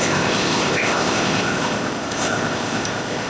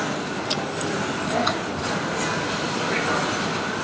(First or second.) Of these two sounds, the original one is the second